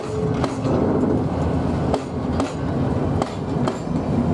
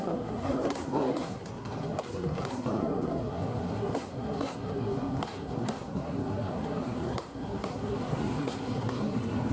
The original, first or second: first